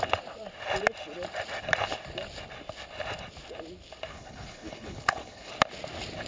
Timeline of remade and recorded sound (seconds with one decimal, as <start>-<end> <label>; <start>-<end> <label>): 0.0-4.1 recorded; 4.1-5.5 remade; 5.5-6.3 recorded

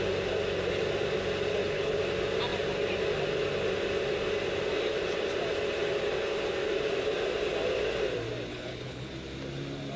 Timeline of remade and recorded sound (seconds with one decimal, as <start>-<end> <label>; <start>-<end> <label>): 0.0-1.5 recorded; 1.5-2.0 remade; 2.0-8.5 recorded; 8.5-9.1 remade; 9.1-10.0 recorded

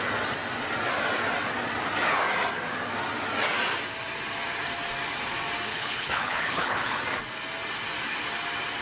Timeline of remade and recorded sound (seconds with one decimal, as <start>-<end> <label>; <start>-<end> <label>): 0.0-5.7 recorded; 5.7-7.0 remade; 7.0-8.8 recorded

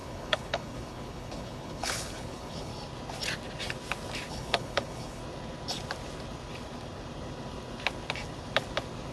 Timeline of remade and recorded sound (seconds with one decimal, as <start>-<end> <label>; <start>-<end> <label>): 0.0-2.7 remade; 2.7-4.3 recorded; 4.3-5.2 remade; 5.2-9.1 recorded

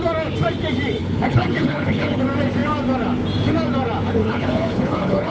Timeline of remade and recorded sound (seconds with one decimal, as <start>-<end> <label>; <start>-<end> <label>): 0.0-1.0 recorded; 1.0-2.2 remade; 2.2-4.2 recorded; 4.2-5.3 remade

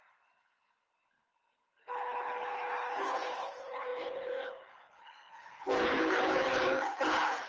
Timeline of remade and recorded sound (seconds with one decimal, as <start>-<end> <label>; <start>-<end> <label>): 0.0-7.5 remade

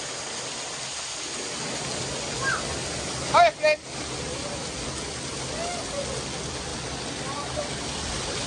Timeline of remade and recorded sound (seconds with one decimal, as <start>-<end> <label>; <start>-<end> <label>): 0.0-8.5 recorded

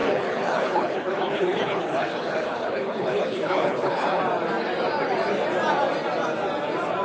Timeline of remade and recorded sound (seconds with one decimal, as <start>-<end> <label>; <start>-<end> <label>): 0.0-4.2 remade; 4.2-7.0 recorded